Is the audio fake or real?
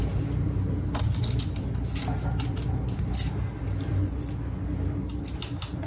real